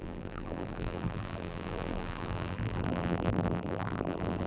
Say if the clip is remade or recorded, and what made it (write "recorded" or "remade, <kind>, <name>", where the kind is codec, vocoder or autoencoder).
remade, vocoder, BigVGAN v2